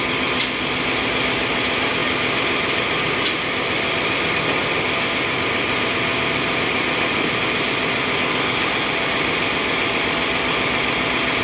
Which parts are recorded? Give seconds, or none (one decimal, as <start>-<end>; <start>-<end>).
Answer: 0.0-11.4